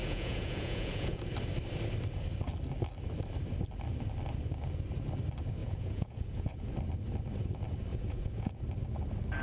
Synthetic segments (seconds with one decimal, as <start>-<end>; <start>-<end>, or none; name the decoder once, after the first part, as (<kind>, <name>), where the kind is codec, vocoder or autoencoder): 0.0-1.2 (vocoder, Vocos); 5.6-6.7; 7.9-8.6